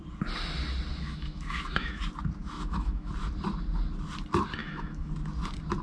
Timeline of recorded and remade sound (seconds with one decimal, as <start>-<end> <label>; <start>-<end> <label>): 0.0-0.9 recorded; 0.9-2.0 remade; 2.0-2.4 recorded; 2.4-3.1 remade; 3.1-4.6 recorded; 4.6-5.1 remade; 5.1-5.8 recorded